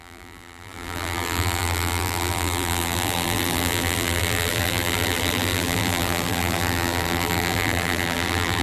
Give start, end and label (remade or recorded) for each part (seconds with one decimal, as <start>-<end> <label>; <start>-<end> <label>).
0.0-8.6 remade